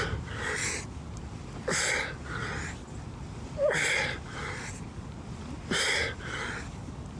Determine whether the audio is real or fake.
real